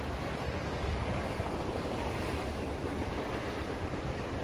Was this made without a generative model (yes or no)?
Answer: yes